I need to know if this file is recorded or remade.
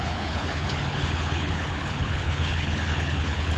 remade